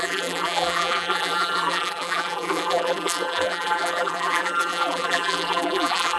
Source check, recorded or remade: remade